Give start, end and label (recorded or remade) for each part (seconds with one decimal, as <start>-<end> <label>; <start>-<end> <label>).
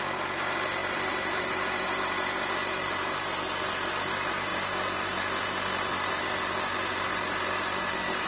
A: 0.0-8.3 recorded